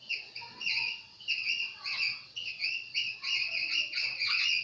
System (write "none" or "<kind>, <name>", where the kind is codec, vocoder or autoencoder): vocoder, WaveNeXt